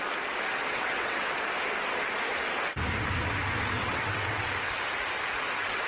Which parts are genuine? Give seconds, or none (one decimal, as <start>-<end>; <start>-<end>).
0.0-0.7; 1.4-3.8; 4.5-5.9